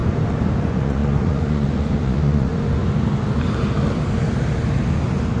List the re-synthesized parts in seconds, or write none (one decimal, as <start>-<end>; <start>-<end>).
0.6-2.5